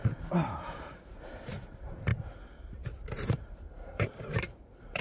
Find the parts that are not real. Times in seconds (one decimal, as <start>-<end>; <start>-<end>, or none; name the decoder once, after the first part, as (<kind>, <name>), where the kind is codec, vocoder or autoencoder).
0.0-2.1 (vocoder, BigVGAN v2); 3.1-5.0